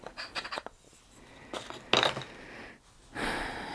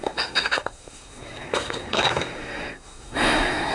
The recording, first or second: first